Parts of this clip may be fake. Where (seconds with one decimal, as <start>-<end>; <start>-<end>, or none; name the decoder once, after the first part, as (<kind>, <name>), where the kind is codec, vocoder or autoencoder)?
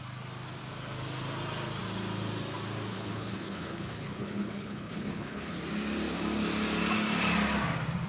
2.9-5.6 (codec, HILCodec)